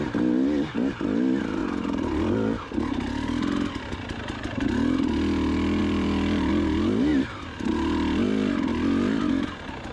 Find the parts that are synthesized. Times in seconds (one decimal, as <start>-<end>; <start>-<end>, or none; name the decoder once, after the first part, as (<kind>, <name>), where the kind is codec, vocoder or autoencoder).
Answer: 1.6-2.8 (vocoder, BigVGAN v2); 5.8-6.5; 7.1-7.7; 8.7-9.3